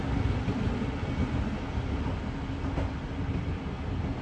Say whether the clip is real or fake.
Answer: real